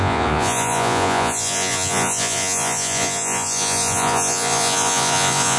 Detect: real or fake fake